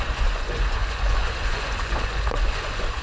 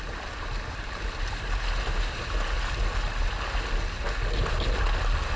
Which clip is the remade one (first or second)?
first